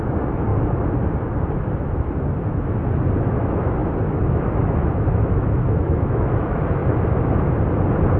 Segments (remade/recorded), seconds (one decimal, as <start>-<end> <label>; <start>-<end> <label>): 0.0-0.5 remade; 0.5-3.2 recorded; 3.2-6.8 remade; 6.8-8.2 recorded